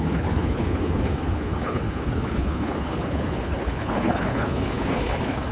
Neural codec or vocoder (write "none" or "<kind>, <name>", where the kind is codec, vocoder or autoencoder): codec, HILCodec